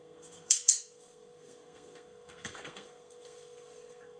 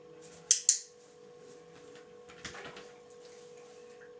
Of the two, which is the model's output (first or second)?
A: first